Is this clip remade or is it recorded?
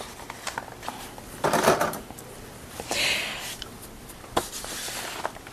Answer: recorded